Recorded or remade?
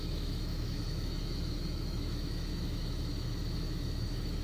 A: remade